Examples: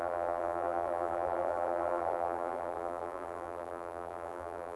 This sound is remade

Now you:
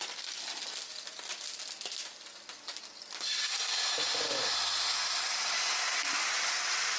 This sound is recorded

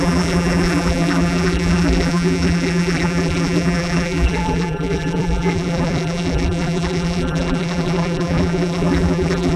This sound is remade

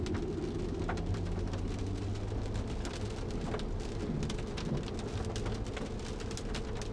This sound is recorded